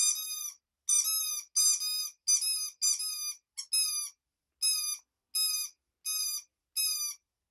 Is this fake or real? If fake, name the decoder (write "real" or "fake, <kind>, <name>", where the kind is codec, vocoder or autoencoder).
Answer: real